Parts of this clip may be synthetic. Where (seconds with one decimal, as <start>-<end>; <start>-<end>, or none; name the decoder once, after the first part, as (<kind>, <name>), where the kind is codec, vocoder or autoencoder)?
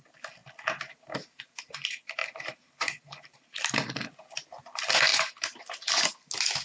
2.2-3.7 (vocoder, BigVGAN v2); 5.1-5.9